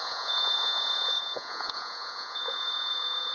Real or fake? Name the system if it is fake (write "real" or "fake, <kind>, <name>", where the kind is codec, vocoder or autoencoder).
fake, vocoder, Vocos